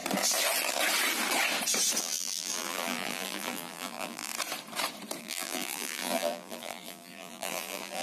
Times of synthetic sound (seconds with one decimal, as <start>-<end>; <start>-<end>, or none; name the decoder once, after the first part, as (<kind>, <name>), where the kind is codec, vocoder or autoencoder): 2.0-4.3 (vocoder, BigVGAN v2); 5.2-8.0